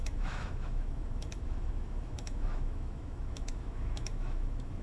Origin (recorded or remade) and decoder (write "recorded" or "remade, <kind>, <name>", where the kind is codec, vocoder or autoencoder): remade, autoencoder, DAC-VAE